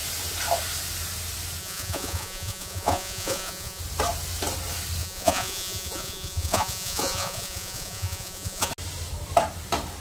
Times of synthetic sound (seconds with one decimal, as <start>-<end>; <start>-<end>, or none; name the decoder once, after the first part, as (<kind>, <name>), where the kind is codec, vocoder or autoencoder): 1.6-3.8 (vocoder, Vocos); 5.0-8.7